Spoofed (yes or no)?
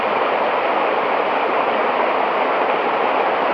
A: no